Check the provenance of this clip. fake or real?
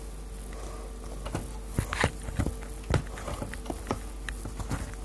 real